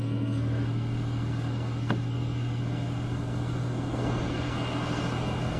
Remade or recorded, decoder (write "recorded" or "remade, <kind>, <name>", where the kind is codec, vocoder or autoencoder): remade, codec, SNAC